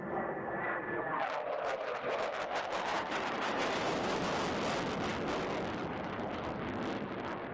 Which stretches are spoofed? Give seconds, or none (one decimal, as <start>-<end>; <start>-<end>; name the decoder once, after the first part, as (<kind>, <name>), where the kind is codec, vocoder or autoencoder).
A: 2.9-4.3 (vocoder, BigVGAN v2)

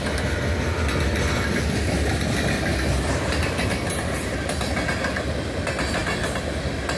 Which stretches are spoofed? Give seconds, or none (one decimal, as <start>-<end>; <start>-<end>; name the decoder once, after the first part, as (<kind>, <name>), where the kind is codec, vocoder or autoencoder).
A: none

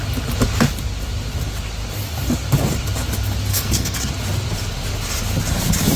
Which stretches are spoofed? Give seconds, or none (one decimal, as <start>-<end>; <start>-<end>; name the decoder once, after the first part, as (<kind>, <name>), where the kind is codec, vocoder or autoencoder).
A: 3.5-4.1 (codec, SNAC)